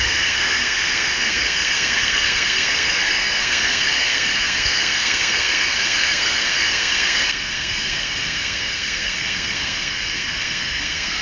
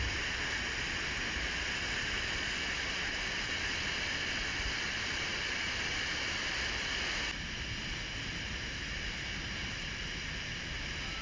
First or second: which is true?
second